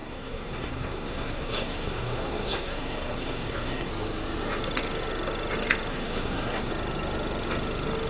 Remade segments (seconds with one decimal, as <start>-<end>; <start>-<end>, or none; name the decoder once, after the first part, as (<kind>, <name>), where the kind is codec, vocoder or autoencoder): 0.0-3.9 (codec, SNAC); 5.9-6.7